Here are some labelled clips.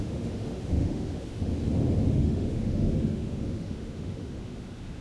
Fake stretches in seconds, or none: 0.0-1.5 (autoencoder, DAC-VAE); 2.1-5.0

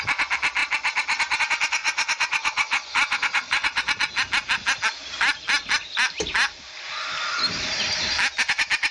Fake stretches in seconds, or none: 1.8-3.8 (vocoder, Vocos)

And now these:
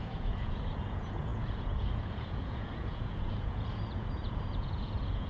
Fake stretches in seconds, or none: 0.0-5.3 (vocoder, Vocos)

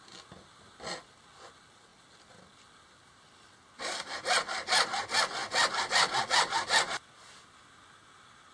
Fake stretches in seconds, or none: none

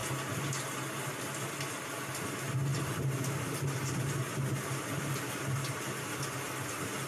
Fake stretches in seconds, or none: none

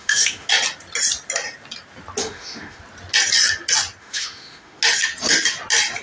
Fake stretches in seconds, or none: 0.0-0.5 (autoencoder, DAC-VAE); 2.2-2.8; 4.0-4.8

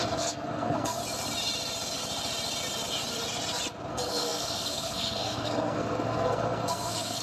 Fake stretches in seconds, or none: 0.0-1.0 (codec, SNAC); 3.9-7.2

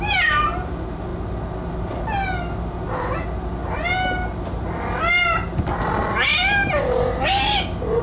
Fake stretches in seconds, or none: none